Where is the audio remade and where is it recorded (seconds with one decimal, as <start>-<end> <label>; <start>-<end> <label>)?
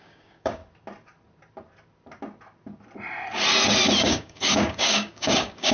0.0-0.6 remade; 0.6-4.0 recorded; 4.0-5.7 remade